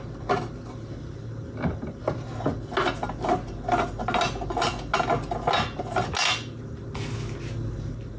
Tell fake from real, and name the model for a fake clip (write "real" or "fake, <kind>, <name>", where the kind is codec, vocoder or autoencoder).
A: real